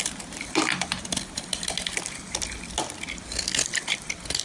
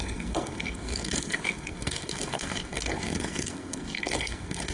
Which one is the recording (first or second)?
first